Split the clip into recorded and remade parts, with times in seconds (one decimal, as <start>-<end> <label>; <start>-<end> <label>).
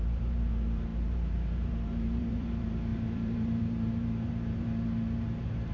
0.0-5.7 remade